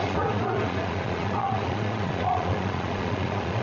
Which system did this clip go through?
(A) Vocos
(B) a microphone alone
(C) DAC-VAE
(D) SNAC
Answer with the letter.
A